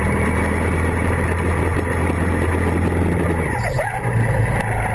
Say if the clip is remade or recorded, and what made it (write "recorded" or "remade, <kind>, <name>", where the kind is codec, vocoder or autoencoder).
recorded